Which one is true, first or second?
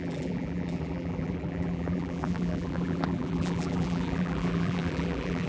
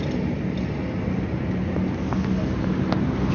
second